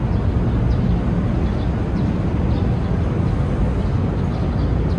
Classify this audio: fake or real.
real